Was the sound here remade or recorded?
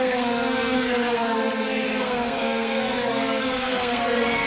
remade